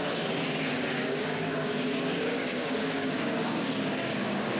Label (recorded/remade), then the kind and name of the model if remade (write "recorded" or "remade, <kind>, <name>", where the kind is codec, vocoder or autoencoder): remade, codec, DAC